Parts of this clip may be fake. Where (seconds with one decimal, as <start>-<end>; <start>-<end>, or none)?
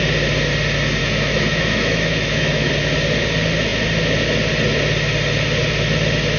1.0-2.7